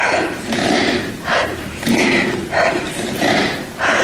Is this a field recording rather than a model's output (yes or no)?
no